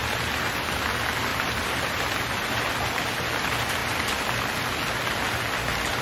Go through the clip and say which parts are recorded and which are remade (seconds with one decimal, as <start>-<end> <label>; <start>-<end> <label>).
0.0-1.3 recorded; 1.3-2.7 remade; 2.7-6.0 recorded